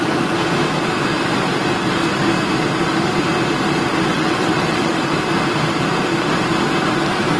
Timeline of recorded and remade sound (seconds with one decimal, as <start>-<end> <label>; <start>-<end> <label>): 0.0-4.1 recorded; 4.1-4.9 remade; 4.9-7.4 recorded